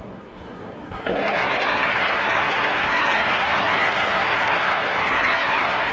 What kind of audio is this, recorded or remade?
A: remade